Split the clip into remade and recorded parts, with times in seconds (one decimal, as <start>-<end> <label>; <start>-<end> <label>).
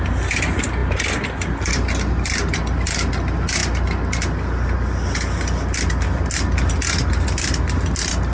0.0-8.3 recorded